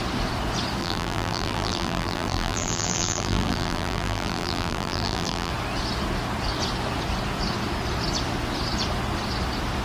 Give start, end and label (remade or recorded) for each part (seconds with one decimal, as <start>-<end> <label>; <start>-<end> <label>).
0.0-0.8 recorded; 0.8-5.5 remade; 5.5-9.8 recorded